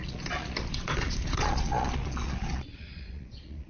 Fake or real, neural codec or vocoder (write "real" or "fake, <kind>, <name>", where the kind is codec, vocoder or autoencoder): fake, vocoder, Vocos